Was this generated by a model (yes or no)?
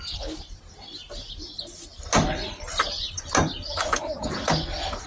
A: no